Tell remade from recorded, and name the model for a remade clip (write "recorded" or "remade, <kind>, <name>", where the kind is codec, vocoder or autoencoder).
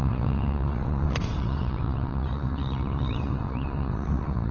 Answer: remade, vocoder, WaveNeXt